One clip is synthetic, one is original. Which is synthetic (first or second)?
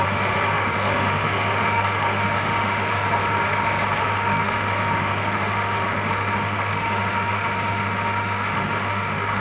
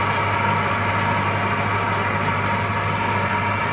first